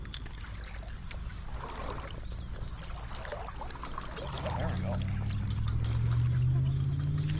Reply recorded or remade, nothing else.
recorded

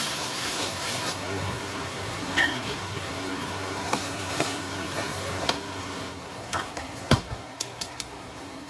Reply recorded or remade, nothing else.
remade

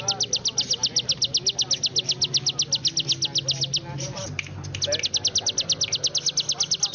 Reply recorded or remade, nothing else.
recorded